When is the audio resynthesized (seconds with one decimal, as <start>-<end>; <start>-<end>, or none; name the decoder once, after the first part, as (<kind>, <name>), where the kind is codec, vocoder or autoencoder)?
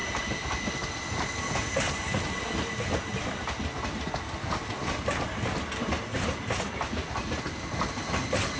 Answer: none